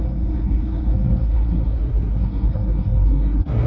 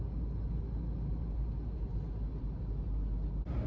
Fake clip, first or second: first